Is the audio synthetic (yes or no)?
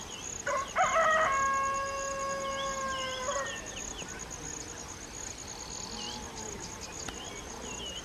no